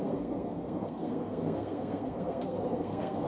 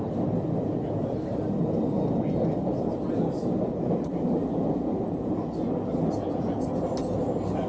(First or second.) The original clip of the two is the second